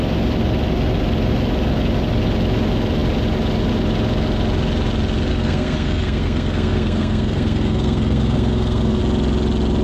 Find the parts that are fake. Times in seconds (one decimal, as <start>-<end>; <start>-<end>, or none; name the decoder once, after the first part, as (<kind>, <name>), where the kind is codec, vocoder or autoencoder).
5.3-9.0 (codec, SNAC)